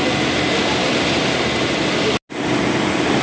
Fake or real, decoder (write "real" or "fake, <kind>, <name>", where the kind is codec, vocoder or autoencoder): real